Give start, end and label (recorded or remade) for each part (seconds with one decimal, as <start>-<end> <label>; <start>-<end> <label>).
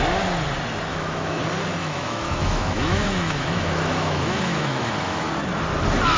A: 0.0-0.9 recorded; 0.9-1.4 remade; 1.4-1.8 recorded; 1.8-5.3 remade; 5.3-6.2 recorded